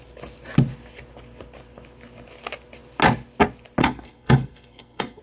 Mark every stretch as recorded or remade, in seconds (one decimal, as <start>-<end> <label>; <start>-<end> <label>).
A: 0.0-3.8 recorded; 3.8-5.2 remade